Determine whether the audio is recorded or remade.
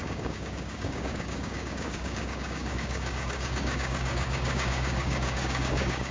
remade